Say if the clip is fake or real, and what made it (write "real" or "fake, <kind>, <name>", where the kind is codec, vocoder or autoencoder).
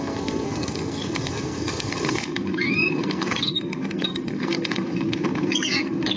fake, codec, SNAC